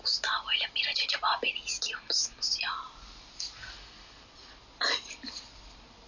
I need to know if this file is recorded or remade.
recorded